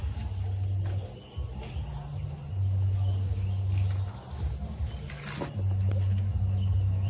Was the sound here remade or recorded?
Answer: recorded